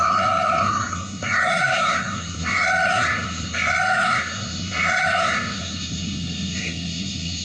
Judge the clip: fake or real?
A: fake